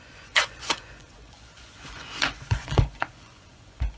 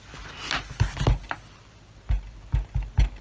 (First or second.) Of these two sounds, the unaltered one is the second